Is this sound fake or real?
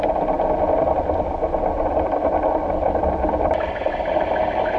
fake